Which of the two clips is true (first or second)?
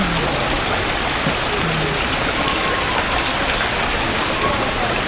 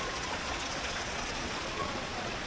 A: first